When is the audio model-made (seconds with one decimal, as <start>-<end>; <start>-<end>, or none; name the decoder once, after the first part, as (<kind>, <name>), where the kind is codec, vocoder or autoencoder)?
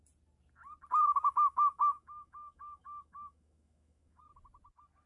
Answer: 1.1-4.2 (autoencoder, DAC-VAE)